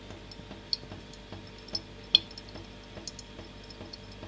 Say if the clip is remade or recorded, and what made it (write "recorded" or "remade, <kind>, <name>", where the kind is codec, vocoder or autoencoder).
recorded